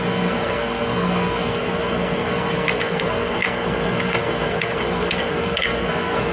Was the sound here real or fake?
fake